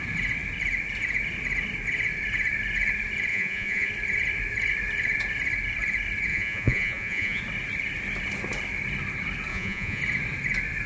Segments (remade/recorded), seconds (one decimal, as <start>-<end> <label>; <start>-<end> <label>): 0.0-3.3 recorded; 3.3-3.9 remade; 3.9-6.3 recorded; 6.3-7.4 remade; 7.4-9.5 recorded; 9.5-10.0 remade; 10.0-10.9 recorded